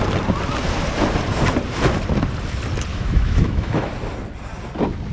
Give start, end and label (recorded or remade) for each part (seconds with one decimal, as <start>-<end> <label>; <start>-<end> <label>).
0.0-2.9 recorded; 2.9-3.9 remade; 3.9-5.1 recorded